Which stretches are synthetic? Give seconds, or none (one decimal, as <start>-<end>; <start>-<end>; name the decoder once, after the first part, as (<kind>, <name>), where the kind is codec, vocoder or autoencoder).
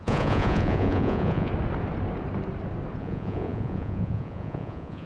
0.0-1.5 (vocoder, Vocos); 3.0-5.1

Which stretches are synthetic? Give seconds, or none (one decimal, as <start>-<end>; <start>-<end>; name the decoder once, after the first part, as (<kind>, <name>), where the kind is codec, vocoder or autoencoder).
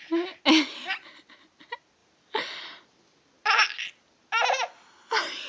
none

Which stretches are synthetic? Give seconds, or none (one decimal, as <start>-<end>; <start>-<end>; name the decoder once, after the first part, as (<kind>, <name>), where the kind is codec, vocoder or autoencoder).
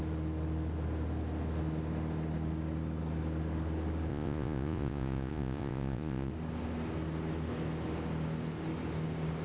4.1-6.3 (vocoder, Vocos)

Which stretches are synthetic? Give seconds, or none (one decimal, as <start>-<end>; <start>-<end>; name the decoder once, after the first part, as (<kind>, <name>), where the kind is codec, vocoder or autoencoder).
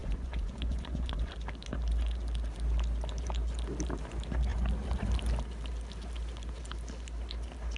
0.0-1.3 (vocoder, Vocos)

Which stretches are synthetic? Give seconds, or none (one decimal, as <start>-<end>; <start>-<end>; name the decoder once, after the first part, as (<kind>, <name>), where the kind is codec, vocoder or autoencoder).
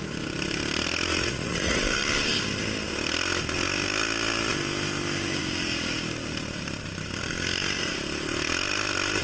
1.1-1.8 (vocoder, Vocos)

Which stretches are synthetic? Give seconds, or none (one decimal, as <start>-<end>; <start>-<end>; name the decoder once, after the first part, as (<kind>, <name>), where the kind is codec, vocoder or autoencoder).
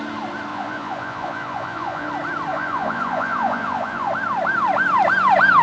0.5-2.1 (vocoder, Vocos); 2.5-4.1